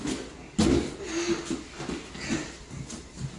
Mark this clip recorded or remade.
recorded